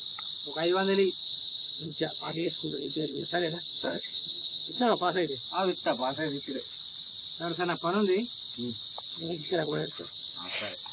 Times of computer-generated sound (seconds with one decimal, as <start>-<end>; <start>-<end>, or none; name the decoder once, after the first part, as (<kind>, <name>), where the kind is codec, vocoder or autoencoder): 1.2-5.3 (vocoder, HiFi-GAN); 9.1-10.4